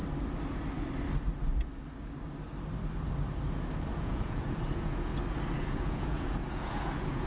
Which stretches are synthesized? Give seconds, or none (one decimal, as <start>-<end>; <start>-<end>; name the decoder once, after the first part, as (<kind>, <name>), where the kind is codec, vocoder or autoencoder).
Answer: 3.9-5.1 (vocoder, Vocos); 5.6-7.3

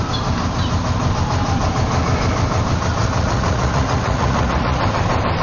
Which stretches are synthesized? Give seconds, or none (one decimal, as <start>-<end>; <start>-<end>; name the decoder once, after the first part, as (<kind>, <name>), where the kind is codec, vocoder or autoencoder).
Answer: 3.0-4.8 (vocoder, Vocos)

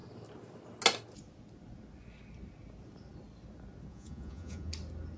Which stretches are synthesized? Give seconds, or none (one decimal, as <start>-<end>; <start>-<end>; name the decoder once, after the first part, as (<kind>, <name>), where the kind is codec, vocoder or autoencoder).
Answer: 3.9-4.7 (vocoder, Vocos)

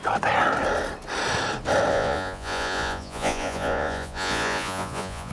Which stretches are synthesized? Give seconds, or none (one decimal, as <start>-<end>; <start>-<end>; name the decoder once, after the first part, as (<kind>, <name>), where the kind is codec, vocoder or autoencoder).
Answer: 1.9-5.3 (vocoder, Vocos)

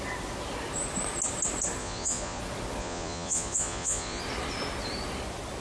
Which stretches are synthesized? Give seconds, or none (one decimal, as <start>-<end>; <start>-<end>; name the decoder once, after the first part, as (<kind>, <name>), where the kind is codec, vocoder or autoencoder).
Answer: 1.8-2.4 (vocoder, Vocos); 2.8-4.2